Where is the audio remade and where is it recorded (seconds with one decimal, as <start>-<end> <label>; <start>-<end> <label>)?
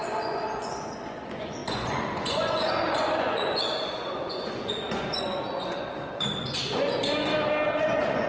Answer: 0.0-7.3 remade; 7.3-7.8 recorded; 7.8-8.3 remade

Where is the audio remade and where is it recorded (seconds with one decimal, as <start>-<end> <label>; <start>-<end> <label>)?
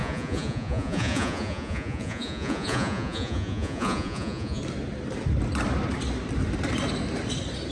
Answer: 0.0-4.6 remade; 4.6-7.7 recorded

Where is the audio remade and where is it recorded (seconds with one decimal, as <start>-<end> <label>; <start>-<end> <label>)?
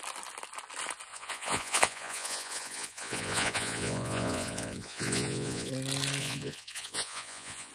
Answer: 0.0-1.1 recorded; 1.1-5.7 remade; 5.7-6.2 recorded; 6.2-7.7 remade